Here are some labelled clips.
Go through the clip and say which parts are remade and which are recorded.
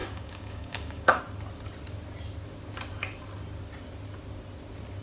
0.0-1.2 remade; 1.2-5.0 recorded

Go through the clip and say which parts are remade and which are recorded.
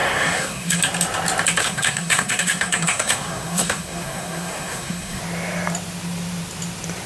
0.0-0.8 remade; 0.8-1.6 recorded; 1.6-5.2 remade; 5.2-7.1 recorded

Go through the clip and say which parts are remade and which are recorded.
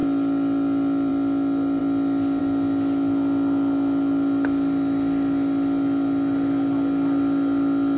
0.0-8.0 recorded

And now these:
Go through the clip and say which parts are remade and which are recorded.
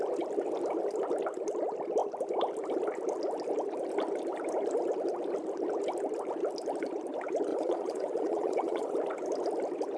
0.0-7.5 recorded; 7.5-8.9 remade; 8.9-10.0 recorded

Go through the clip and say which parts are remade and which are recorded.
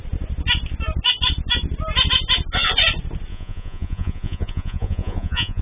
0.0-3.3 recorded; 3.3-5.6 remade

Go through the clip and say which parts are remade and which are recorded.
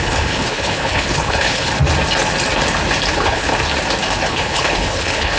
0.0-1.7 remade; 1.7-3.1 recorded; 3.1-3.5 remade; 3.5-4.3 recorded; 4.3-5.4 remade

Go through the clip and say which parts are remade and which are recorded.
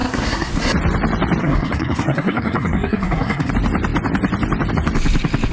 0.0-0.5 remade; 0.5-1.4 recorded; 1.4-3.5 remade; 3.5-5.5 recorded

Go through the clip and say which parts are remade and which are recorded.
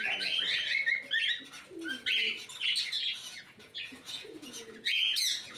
0.0-3.1 recorded; 3.1-5.6 remade